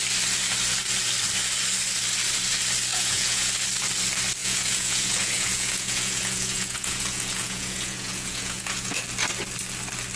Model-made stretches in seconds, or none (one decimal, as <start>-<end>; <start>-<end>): 2.9-3.5; 4.4-9.0